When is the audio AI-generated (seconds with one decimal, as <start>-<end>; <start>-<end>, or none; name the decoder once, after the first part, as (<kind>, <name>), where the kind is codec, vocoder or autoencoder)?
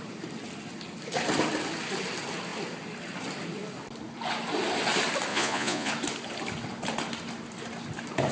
5.3-5.9 (vocoder, Vocos)